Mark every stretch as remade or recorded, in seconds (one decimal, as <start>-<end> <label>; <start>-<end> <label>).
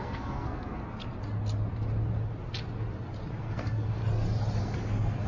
0.0-0.8 remade; 0.8-3.4 recorded; 3.4-4.0 remade; 4.0-4.6 recorded; 4.6-5.3 remade